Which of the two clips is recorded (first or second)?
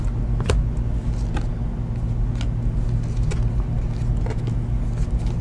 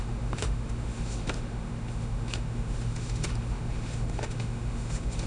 first